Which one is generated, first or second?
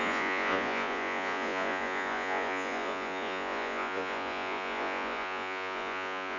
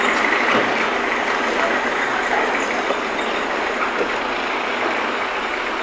first